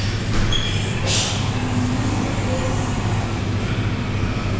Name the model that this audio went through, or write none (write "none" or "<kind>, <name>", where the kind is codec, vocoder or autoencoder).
none